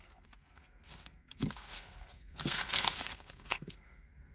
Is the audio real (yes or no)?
no